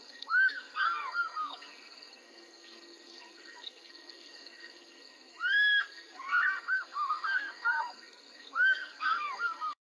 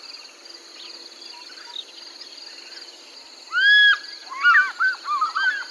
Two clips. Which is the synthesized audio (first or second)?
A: first